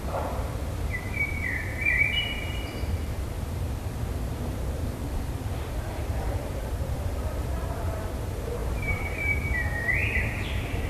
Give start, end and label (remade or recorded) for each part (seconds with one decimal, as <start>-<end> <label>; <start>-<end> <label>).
0.0-10.9 remade

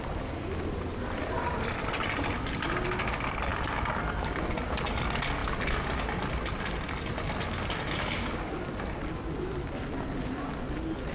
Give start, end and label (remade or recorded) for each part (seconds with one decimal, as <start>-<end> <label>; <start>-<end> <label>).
0.0-11.1 recorded

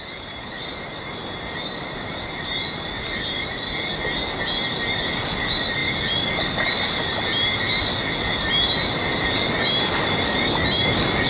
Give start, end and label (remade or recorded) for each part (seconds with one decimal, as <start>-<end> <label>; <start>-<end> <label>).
0.0-11.3 recorded

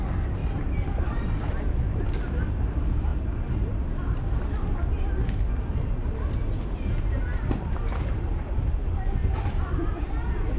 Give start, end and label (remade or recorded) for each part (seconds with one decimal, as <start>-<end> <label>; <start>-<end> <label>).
0.0-0.4 recorded; 0.4-1.3 remade; 1.3-7.3 recorded; 7.3-9.6 remade; 9.6-10.6 recorded

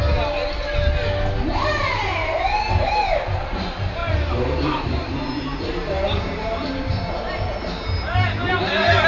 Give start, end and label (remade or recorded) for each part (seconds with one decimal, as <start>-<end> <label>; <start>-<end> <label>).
0.0-4.0 recorded; 4.0-8.5 remade; 8.5-9.1 recorded